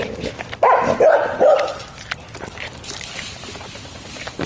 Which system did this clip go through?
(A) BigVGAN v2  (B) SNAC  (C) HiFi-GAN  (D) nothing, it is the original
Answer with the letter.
D